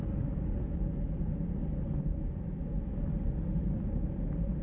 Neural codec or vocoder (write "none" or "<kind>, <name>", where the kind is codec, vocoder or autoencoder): none